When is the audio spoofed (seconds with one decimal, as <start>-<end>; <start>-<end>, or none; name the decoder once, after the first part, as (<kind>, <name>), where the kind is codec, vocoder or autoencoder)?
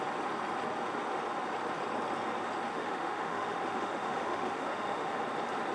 2.7-5.2 (autoencoder, DAC-VAE)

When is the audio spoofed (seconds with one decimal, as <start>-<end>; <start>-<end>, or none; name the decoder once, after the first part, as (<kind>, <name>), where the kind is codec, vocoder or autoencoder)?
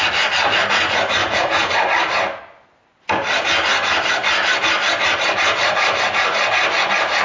1.2-1.7 (vocoder, Vocos)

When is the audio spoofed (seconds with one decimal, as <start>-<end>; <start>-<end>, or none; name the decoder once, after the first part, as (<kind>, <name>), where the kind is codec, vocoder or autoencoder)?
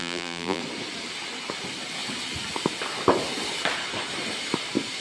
0.0-0.6 (vocoder, BigVGAN v2)